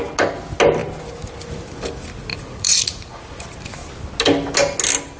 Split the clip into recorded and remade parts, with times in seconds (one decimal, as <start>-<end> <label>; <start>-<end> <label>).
0.0-2.3 recorded; 2.3-3.4 remade; 3.4-5.2 recorded